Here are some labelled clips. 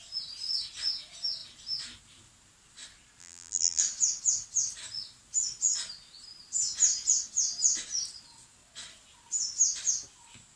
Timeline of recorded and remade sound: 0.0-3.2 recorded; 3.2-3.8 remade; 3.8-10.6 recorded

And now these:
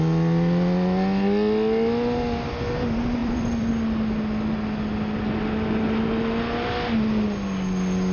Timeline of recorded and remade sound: 0.0-3.2 recorded; 3.2-3.7 remade; 3.7-8.1 recorded

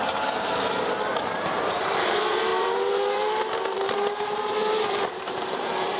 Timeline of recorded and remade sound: 0.0-6.0 remade

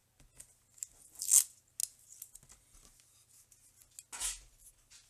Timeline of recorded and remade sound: 0.0-5.1 recorded

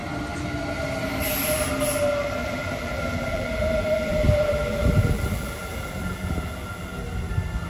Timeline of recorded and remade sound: 0.0-2.4 recorded; 2.4-7.0 remade; 7.0-7.7 recorded